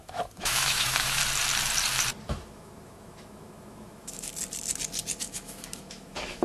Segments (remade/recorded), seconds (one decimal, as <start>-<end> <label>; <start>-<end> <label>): 0.0-1.2 remade; 1.2-2.3 recorded; 2.3-4.3 remade; 4.3-5.2 recorded; 5.2-6.4 remade